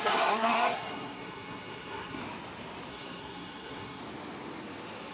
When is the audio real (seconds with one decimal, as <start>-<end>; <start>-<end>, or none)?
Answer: 2.2-2.9; 4.0-5.1